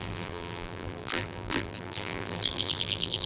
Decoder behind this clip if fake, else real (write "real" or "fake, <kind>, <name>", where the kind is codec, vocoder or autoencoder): fake, vocoder, BigVGAN v2